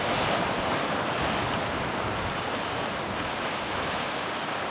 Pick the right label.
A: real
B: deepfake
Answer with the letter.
A